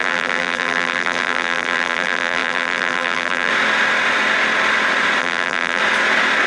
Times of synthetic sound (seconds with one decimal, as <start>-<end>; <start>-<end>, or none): 0.0-3.5; 5.2-5.8